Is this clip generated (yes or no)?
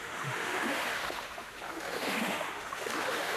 yes